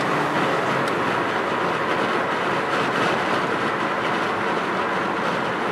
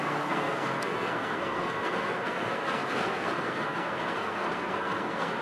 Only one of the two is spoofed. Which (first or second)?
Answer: second